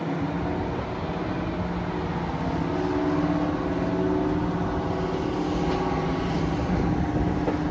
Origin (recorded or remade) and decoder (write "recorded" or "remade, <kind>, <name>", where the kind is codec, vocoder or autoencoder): recorded